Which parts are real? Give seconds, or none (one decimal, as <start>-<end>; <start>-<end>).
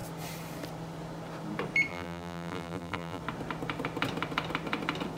0.0-1.9; 3.2-5.2